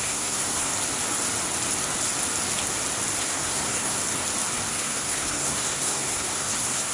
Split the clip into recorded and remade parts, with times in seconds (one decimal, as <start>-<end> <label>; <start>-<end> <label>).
0.0-0.7 remade; 0.7-3.2 recorded; 3.2-4.0 remade; 4.0-4.7 recorded; 4.7-6.9 remade